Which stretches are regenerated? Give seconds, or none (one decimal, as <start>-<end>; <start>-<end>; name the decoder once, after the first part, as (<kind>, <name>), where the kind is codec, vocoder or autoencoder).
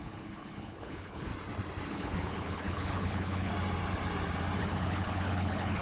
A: 0.0-1.3 (codec, HILCodec); 1.9-3.5; 4.6-5.8